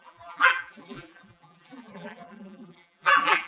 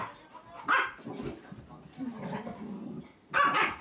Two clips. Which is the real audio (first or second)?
second